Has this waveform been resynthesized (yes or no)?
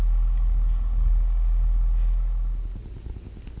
no